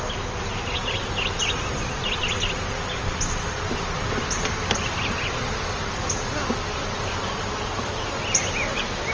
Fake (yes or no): no